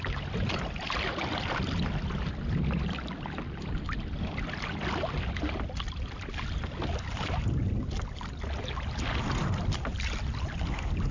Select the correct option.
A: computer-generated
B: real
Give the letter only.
B